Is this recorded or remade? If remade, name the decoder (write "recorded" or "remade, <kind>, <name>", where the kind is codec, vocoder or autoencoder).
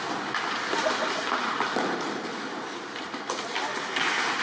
recorded